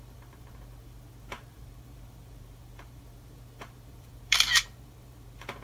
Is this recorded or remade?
remade